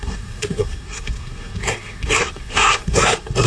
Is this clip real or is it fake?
fake